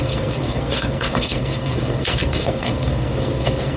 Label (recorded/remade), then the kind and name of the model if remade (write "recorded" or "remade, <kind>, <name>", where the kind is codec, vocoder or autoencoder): remade, codec, SNAC